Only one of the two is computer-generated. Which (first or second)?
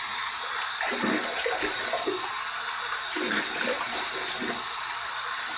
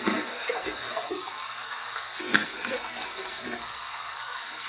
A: second